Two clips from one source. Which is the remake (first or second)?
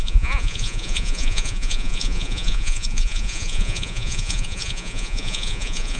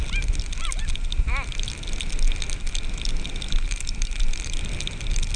first